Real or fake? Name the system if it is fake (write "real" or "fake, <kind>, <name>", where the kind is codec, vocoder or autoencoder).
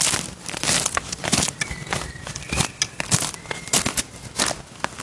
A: real